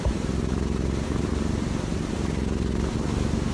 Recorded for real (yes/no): yes